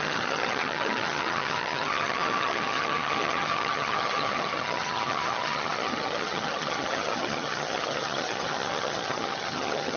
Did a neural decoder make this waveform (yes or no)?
yes